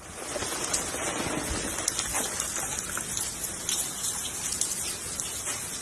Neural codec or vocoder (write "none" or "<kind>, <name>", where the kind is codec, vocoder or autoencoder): none